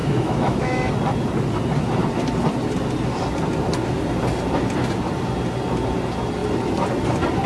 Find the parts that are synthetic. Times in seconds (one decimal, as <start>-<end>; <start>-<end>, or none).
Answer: 0.0-0.9